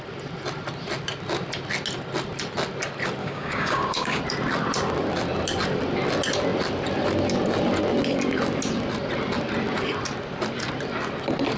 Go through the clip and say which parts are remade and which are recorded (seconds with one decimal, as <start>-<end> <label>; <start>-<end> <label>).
0.0-3.2 recorded; 3.2-4.2 remade; 4.2-11.6 recorded

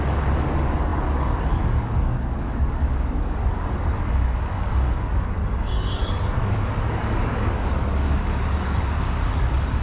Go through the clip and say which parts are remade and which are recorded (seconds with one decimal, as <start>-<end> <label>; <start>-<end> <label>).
0.0-9.8 remade

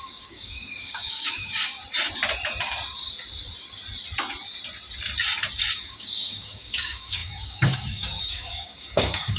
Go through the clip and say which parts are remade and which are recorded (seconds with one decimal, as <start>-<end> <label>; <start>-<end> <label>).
0.0-1.8 remade; 1.8-5.7 recorded; 5.7-9.4 remade

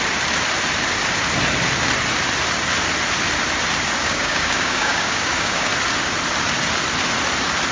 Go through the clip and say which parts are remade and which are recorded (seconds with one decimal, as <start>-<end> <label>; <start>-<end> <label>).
0.0-4.0 recorded; 4.0-5.7 remade; 5.7-7.7 recorded

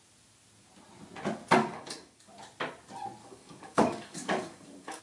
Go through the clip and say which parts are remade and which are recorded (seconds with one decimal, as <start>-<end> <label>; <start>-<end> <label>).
0.0-1.6 recorded; 1.6-2.3 remade; 2.3-3.2 recorded; 3.2-5.0 remade

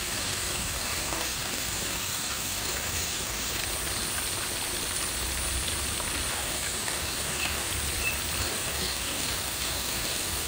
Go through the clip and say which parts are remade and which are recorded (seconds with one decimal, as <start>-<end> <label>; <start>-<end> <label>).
0.0-3.6 remade; 3.6-6.3 recorded; 6.3-7.7 remade; 7.7-8.4 recorded; 8.4-10.5 remade

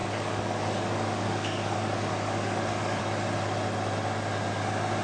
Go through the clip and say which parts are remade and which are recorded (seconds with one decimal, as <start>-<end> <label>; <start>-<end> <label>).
0.0-3.0 remade; 3.0-5.0 recorded